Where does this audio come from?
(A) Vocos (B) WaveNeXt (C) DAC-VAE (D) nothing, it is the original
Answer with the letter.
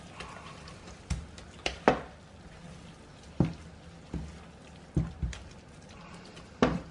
D